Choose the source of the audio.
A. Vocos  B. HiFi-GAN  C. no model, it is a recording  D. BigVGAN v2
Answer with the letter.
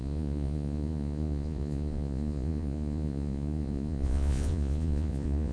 A